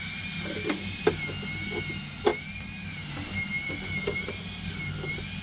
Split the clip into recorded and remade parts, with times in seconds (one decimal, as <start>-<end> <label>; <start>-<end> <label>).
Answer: 0.0-5.4 recorded